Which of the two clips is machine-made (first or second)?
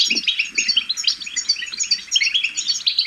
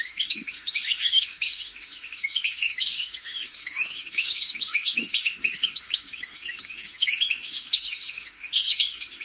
second